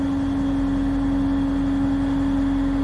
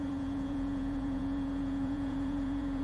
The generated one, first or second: second